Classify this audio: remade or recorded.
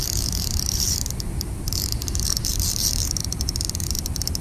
remade